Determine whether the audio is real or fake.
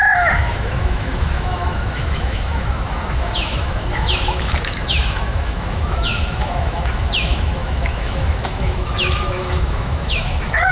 fake